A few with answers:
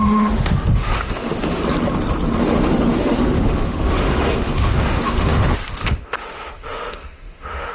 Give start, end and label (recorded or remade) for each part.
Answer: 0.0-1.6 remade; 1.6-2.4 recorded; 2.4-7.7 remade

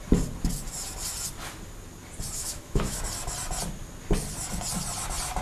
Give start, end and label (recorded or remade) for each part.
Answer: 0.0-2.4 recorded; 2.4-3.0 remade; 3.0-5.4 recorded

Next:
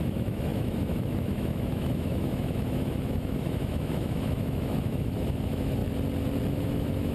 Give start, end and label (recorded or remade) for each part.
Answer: 0.0-5.8 remade; 5.8-6.5 recorded; 6.5-7.1 remade